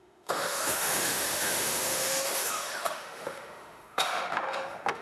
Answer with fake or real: fake